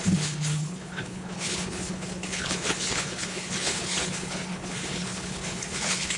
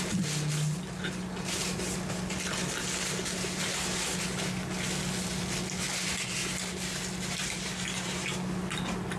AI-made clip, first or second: first